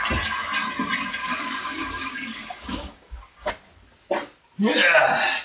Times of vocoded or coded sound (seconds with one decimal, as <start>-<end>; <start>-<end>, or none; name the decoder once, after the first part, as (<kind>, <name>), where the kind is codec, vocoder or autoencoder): 1.2-3.5 (codec, DAC)